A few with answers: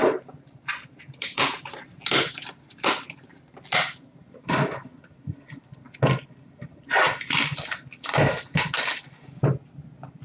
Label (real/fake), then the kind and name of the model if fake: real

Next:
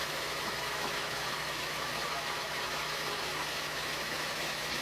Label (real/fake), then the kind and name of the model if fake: fake, autoencoder, DAC-VAE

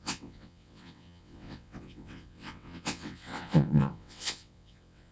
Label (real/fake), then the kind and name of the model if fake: fake, vocoder, WaveNeXt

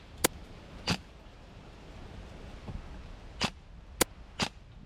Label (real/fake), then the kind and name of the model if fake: real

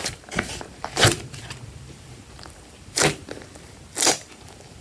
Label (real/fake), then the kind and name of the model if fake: fake, vocoder, BigVGAN v2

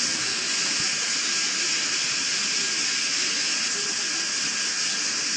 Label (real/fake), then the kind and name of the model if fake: real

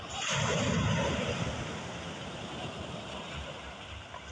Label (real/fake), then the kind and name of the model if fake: real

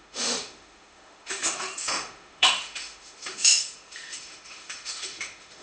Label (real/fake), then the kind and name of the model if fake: fake, autoencoder, DAC-VAE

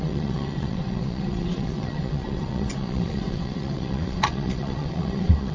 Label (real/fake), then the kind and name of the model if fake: fake, vocoder, WaveNeXt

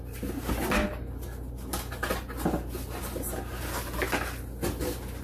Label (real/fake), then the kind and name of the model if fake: real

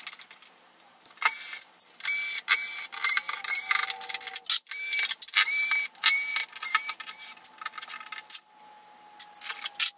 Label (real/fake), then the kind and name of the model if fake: real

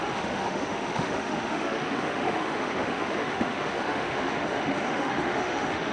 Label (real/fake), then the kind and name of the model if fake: fake, autoencoder, DAC-VAE